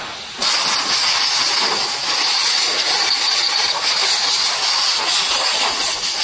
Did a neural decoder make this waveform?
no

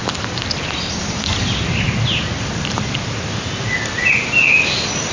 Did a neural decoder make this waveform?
no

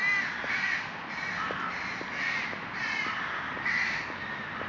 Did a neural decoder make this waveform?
no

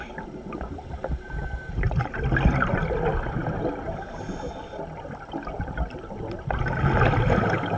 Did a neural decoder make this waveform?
no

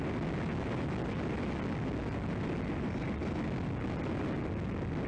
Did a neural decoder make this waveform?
no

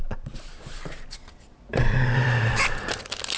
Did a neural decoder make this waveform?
no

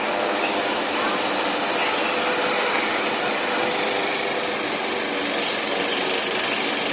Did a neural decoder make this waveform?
no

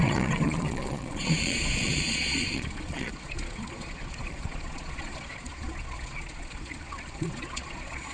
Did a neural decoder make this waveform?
yes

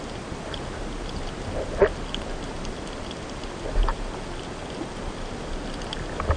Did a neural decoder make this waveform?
no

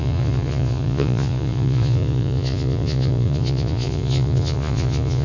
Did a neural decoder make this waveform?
yes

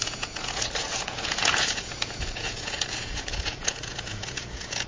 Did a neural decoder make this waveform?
yes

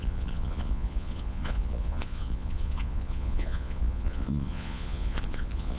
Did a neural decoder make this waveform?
yes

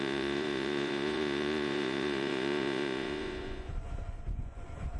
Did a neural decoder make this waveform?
yes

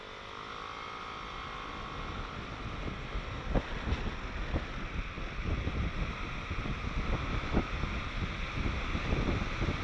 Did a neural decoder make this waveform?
no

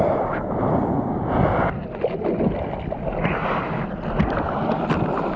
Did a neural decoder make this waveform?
no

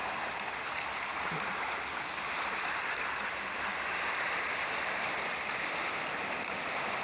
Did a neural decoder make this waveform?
no